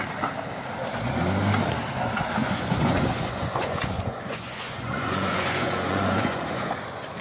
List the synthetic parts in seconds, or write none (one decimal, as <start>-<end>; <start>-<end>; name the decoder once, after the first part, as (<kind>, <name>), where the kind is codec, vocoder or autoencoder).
2.4-6.7 (vocoder, Vocos)